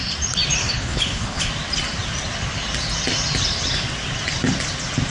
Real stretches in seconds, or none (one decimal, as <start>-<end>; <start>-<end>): 0.0-0.6; 1.5-5.1